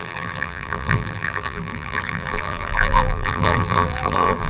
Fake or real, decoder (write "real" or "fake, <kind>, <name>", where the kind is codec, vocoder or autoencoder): fake, vocoder, BigVGAN v2